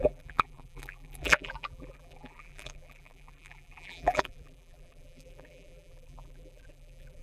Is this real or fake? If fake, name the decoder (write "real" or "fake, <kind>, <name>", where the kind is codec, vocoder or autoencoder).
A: fake, vocoder, BigVGAN v2